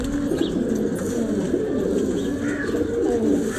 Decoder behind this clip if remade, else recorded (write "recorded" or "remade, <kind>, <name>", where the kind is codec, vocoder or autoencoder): recorded